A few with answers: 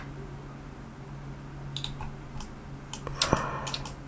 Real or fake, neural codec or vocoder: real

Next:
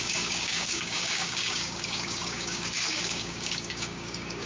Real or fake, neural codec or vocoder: fake, codec, DAC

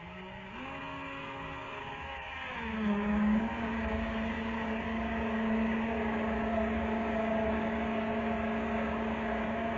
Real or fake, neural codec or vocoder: fake, codec, DAC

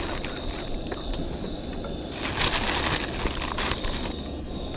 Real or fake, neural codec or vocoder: real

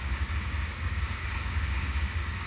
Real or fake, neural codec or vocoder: fake, codec, DAC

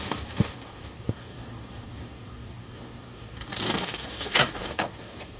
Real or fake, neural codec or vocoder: fake, codec, DAC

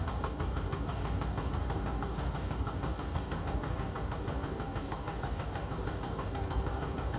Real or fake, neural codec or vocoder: fake, codec, DAC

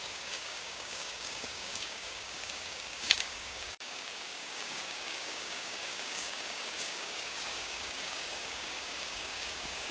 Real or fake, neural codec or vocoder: fake, codec, DAC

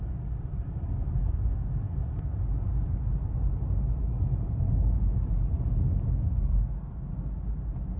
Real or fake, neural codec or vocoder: real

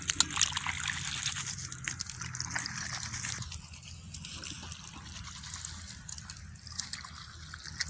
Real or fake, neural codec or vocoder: real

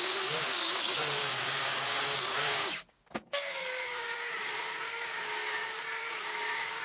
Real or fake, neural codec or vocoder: fake, codec, DAC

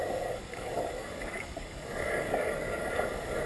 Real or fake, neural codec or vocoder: fake, codec, DAC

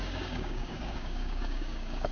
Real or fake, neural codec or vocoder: fake, codec, DAC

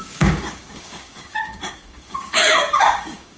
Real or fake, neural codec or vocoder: fake, codec, DAC